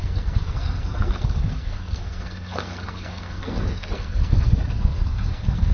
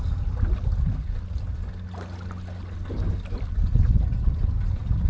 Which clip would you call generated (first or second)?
first